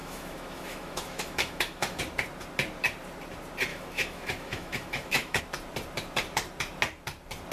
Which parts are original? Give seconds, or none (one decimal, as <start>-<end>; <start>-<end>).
2.0-3.7; 5.4-7.5